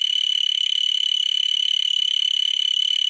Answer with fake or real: fake